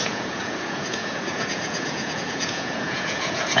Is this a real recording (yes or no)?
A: no